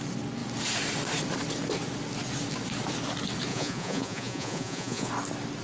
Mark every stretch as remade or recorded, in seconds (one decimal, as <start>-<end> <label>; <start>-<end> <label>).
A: 0.0-3.5 recorded; 3.5-5.1 remade; 5.1-5.6 recorded

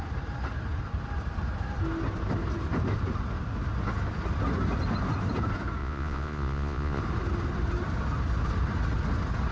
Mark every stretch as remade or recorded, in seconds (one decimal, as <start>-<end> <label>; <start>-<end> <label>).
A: 0.0-5.8 recorded; 5.8-7.0 remade; 7.0-9.5 recorded